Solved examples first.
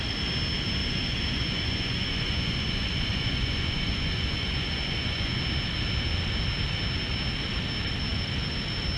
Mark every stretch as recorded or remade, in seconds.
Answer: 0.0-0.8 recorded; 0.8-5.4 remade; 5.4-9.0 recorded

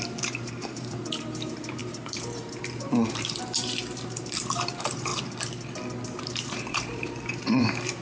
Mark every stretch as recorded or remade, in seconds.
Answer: 0.0-5.1 remade; 5.1-6.2 recorded; 6.2-8.0 remade

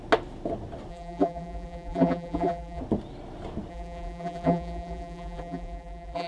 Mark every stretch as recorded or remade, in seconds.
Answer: 0.0-0.9 recorded; 0.9-2.8 remade; 2.8-3.7 recorded; 3.7-6.3 remade

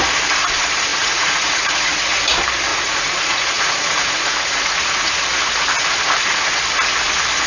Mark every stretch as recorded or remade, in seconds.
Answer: 0.0-0.9 recorded; 0.9-2.2 remade; 2.2-2.7 recorded; 2.7-5.2 remade; 5.2-7.5 recorded